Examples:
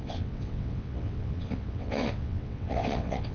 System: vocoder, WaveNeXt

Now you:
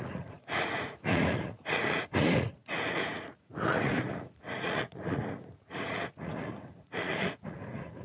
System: vocoder, Vocos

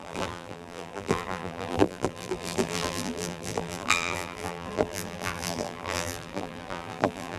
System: vocoder, BigVGAN v2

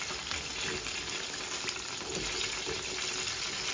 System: none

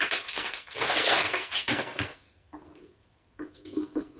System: codec, SNAC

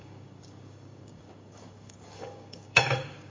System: codec, DAC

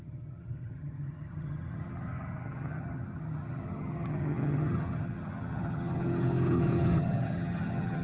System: vocoder, HiFi-GAN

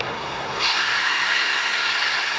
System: codec, SNAC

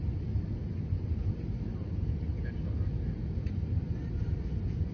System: none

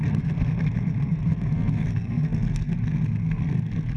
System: codec, SNAC